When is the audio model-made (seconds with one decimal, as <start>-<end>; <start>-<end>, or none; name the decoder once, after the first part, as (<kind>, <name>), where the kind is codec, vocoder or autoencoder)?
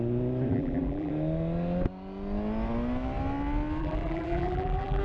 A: 0.5-1.1 (vocoder, BigVGAN v2); 3.8-5.0